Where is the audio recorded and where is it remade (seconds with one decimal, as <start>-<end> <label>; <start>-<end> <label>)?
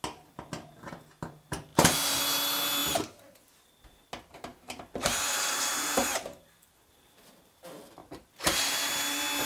0.0-4.5 recorded; 4.5-7.5 remade; 7.5-8.0 recorded; 8.0-8.9 remade; 8.9-9.5 recorded